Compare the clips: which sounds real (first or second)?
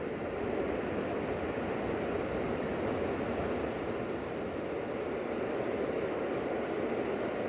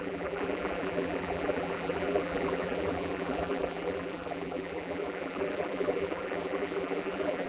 first